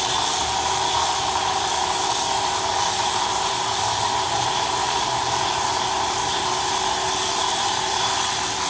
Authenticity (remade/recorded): remade